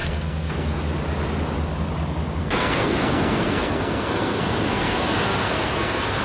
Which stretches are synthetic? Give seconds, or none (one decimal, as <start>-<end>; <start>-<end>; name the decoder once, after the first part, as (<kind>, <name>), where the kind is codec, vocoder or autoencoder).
0.0-0.8 (codec, SNAC); 2.4-6.2

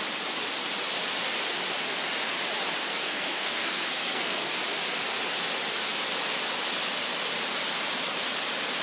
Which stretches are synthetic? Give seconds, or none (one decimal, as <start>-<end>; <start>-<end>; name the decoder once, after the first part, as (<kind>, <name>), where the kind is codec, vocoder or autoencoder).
2.9-4.5 (codec, SNAC)